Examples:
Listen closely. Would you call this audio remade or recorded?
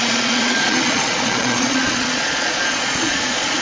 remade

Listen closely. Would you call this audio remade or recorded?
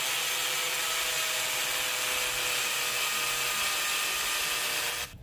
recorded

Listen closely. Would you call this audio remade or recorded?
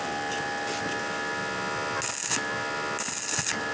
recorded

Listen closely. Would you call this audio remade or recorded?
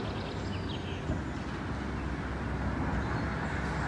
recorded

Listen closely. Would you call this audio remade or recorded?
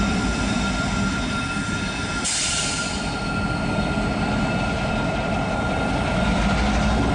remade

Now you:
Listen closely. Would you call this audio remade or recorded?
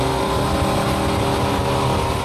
recorded